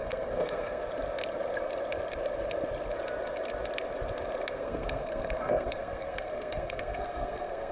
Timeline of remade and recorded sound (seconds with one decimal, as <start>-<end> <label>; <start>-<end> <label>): 0.0-0.8 remade; 0.8-4.5 recorded; 4.5-7.7 remade